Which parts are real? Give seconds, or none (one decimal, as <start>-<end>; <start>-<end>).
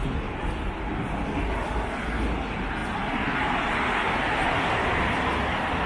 0.0-5.9